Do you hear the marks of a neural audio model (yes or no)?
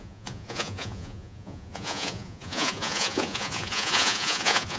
yes